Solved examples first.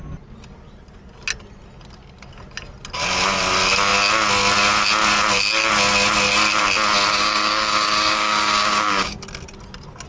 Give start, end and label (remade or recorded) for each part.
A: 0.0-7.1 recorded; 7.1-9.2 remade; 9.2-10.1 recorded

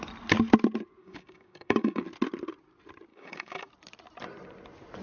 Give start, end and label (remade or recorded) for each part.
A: 0.0-1.0 recorded; 1.0-2.0 remade; 2.0-3.1 recorded; 3.1-3.7 remade; 3.7-5.0 recorded

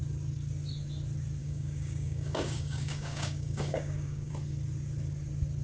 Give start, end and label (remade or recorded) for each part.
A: 0.0-1.4 recorded; 1.4-4.3 remade; 4.3-5.6 recorded

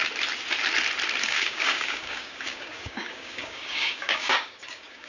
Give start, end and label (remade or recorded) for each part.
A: 0.0-1.2 recorded; 1.2-5.1 remade

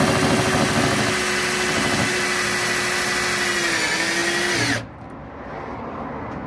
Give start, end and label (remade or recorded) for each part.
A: 0.0-6.5 recorded

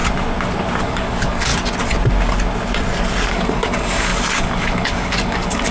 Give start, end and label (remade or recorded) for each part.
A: 0.0-0.8 recorded; 0.8-1.5 remade; 1.5-3.3 recorded; 3.3-5.7 remade